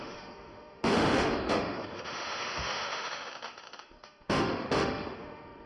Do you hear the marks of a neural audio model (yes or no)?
yes